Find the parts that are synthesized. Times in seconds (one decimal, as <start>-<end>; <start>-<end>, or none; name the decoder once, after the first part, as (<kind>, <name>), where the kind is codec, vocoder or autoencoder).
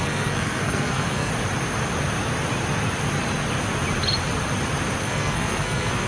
0.0-1.3 (codec, SNAC); 5.0-6.1